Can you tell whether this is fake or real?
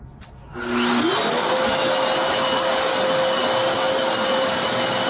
real